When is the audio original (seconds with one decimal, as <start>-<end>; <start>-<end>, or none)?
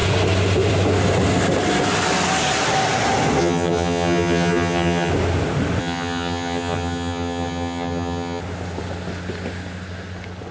0.0-3.4; 5.1-5.8; 8.4-10.5